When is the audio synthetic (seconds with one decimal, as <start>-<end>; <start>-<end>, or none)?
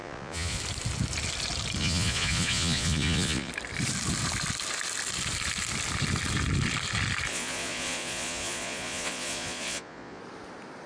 0.0-0.6; 1.8-3.5; 7.3-10.2